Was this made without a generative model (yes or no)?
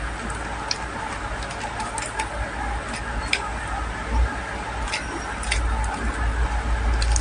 yes